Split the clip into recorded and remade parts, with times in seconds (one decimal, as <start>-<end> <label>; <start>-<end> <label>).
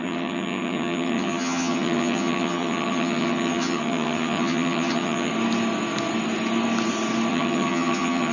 0.0-5.3 remade; 5.3-7.3 recorded; 7.3-8.3 remade